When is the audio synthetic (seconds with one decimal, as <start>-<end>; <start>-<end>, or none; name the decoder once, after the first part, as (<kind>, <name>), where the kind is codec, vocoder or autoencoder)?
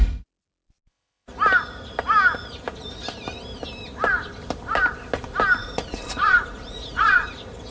5.6-7.3 (vocoder, Vocos)